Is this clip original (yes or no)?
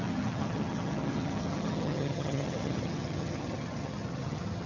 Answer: no